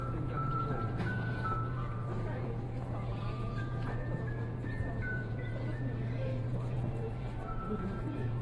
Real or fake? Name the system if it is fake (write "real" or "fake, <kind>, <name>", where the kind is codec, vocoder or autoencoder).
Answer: fake, vocoder, Vocos